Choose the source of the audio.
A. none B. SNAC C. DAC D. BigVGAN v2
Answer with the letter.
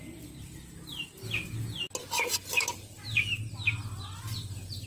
A